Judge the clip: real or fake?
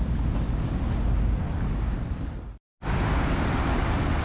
real